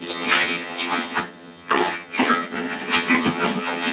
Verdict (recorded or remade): remade